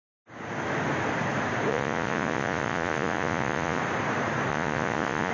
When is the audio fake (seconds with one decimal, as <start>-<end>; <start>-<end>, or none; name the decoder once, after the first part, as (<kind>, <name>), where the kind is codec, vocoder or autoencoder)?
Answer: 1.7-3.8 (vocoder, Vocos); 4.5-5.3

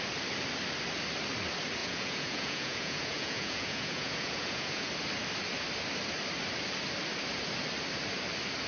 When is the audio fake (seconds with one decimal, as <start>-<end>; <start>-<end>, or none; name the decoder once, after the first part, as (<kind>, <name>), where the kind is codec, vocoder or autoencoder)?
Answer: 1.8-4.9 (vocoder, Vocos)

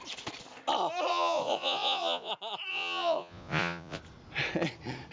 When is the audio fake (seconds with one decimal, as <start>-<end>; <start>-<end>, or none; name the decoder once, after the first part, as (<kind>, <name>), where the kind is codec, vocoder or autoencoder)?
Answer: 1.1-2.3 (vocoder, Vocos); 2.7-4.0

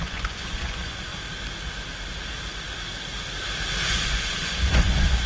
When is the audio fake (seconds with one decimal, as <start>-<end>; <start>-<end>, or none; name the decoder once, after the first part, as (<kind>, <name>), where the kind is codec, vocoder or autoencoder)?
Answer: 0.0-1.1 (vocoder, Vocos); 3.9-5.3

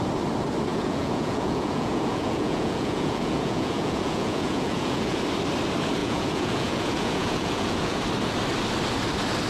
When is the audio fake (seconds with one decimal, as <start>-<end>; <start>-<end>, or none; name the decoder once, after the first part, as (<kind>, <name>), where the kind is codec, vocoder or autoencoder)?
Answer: 0.7-5.2 (vocoder, Vocos); 6.0-8.0